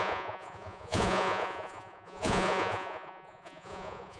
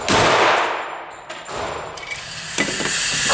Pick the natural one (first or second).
second